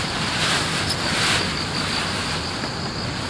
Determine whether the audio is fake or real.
real